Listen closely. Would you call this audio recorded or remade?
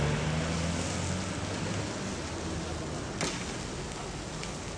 recorded